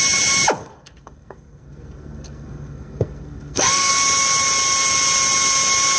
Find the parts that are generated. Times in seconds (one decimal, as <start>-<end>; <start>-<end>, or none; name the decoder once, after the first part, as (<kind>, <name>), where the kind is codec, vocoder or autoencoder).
0.6-3.9 (codec, SNAC)